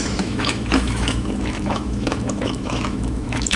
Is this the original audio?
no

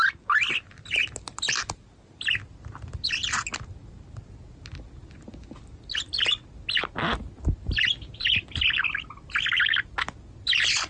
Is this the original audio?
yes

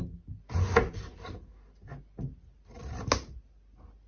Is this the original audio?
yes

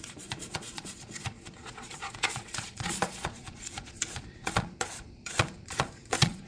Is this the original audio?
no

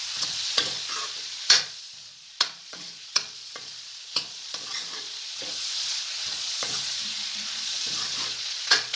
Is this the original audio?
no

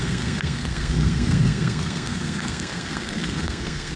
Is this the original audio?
no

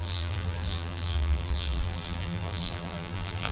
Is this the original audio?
no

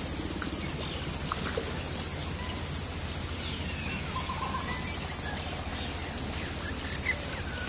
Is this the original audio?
yes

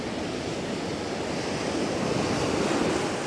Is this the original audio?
yes